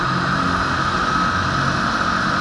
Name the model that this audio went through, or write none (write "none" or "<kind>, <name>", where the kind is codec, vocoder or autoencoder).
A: none